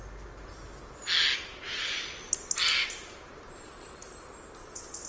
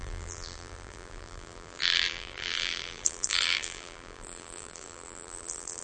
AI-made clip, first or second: second